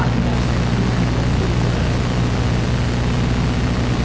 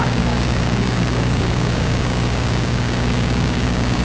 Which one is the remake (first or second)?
second